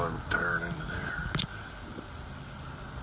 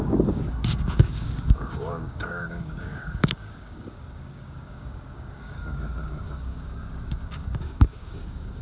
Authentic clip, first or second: first